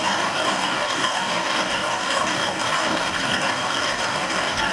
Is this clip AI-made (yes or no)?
yes